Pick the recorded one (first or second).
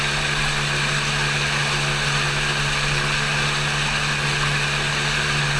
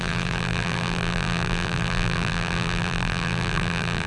first